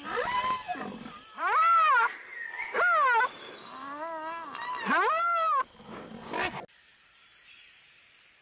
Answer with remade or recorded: recorded